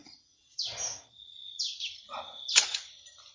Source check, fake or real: real